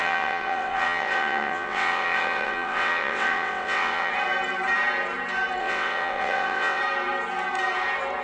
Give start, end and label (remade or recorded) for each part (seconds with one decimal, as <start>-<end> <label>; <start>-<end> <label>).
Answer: 0.0-4.1 remade; 4.1-5.6 recorded; 5.6-6.8 remade; 6.8-8.2 recorded